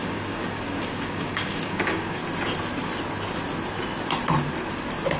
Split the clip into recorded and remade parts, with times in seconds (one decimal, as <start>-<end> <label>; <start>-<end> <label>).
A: 0.0-2.2 remade; 2.2-5.2 recorded